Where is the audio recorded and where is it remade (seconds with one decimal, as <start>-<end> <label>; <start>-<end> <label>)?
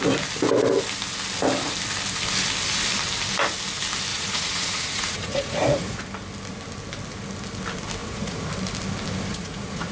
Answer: 0.0-4.1 recorded; 4.1-6.0 remade; 6.0-8.0 recorded; 8.0-8.5 remade; 8.5-9.3 recorded; 9.3-9.9 remade